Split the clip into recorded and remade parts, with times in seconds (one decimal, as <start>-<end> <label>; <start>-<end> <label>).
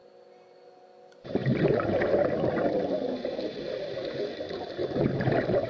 0.0-5.7 recorded